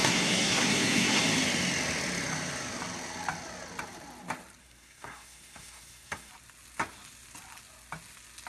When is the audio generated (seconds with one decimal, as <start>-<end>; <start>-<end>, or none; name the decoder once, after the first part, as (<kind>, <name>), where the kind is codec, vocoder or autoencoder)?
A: 0.0-1.2 (codec, SNAC); 4.6-6.3